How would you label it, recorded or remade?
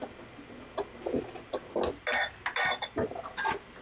recorded